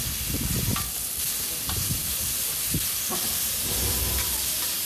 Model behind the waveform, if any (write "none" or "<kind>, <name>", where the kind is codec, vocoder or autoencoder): none